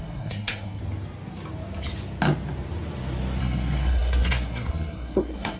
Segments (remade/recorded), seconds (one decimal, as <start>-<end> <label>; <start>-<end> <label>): 0.0-0.8 remade; 0.8-3.4 recorded; 3.4-5.6 remade